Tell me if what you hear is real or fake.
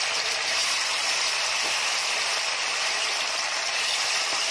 real